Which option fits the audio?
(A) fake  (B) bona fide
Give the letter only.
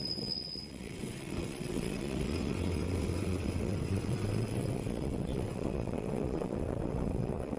A